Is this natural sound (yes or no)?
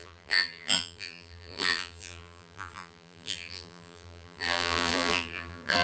no